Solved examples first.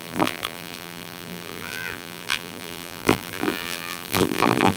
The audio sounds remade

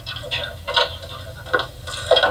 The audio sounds recorded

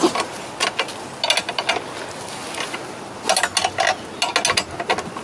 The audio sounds recorded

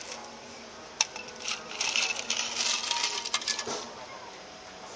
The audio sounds remade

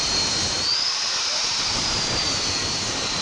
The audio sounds remade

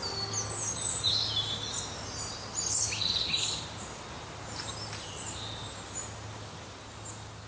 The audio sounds recorded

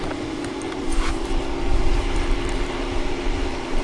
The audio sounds remade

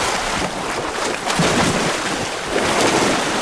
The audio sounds recorded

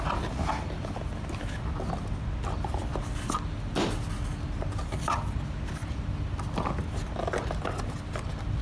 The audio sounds recorded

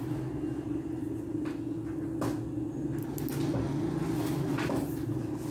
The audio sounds recorded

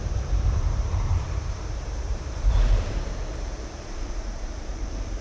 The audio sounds remade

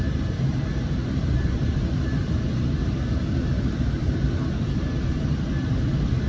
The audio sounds recorded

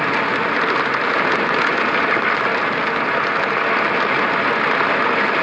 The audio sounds recorded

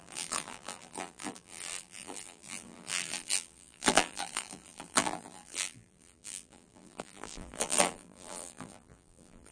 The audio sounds remade